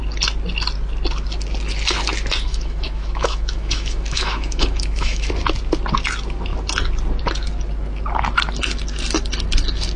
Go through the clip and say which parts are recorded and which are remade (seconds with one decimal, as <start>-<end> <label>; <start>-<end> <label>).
0.0-2.5 recorded; 2.5-5.3 remade; 5.3-10.0 recorded